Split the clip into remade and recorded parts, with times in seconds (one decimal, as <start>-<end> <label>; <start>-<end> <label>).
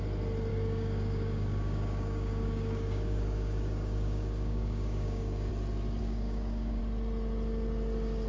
0.0-0.5 recorded; 0.5-5.5 remade; 5.5-6.0 recorded; 6.0-6.8 remade; 6.8-8.3 recorded